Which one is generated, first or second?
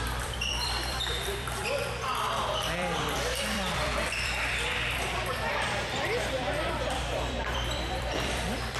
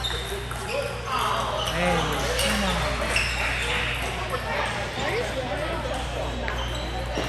first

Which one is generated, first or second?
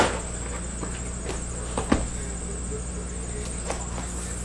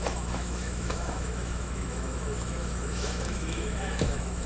second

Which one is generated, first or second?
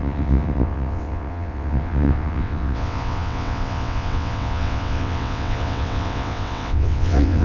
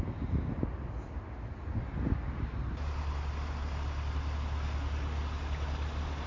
first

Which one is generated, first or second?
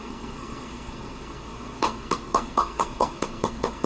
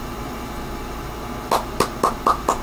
first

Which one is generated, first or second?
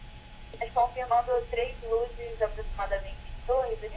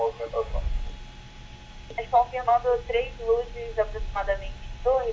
first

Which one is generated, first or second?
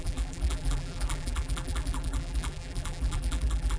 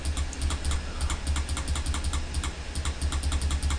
first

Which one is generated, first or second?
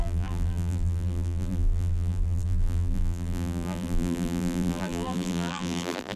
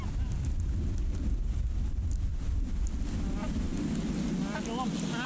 first